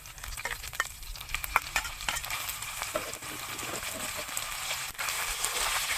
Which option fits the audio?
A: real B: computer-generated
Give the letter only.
A